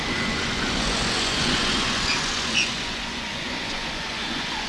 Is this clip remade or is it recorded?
remade